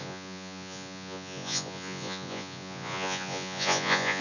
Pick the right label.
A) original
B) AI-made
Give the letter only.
B